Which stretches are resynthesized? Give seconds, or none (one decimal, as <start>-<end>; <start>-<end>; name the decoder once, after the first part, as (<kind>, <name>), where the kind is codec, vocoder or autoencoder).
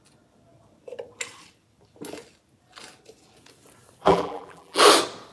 4.0-4.8 (vocoder, BigVGAN v2)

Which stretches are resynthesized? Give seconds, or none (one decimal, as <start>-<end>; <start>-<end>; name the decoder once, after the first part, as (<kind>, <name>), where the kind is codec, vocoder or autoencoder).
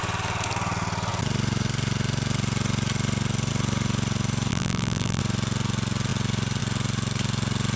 4.5-5.2 (vocoder, BigVGAN v2)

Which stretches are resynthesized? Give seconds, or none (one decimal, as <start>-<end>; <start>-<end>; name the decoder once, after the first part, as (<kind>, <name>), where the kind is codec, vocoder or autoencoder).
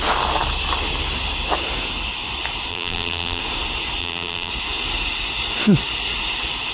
2.7-3.4 (vocoder, BigVGAN v2); 4.0-4.5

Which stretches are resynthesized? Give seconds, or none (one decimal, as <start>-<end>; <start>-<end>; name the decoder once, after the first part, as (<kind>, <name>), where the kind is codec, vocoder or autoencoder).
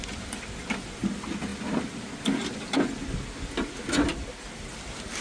none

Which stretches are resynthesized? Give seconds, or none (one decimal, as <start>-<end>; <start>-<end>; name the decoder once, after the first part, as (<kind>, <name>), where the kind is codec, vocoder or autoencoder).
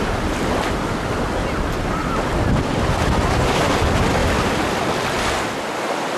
2.0-3.7 (vocoder, BigVGAN v2); 4.2-5.2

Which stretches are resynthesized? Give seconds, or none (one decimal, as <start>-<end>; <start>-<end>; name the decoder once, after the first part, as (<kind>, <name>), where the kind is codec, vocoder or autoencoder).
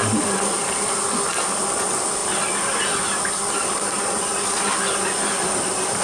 0.0-0.9 (vocoder, BigVGAN v2)